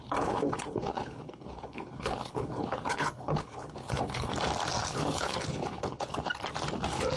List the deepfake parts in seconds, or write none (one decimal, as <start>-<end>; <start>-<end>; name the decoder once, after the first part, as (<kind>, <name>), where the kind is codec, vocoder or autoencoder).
0.0-4.3 (codec, HILCodec); 4.8-6.3